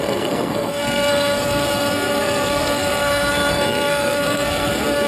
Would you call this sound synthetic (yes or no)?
yes